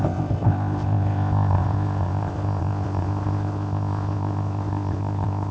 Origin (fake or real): fake